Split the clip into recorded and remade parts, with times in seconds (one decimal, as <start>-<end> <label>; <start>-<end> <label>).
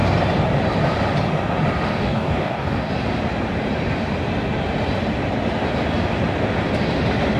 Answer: 0.0-1.9 recorded; 1.9-2.9 remade; 2.9-7.4 recorded